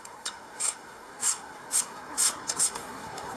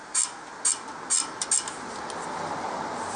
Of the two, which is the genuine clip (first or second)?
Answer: second